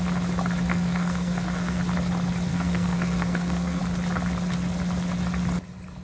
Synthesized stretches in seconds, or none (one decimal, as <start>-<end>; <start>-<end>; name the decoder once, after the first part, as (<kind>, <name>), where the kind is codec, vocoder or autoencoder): 0.7-1.8 (codec, SNAC); 2.5-3.8